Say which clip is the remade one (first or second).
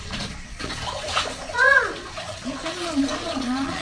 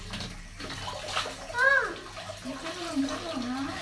first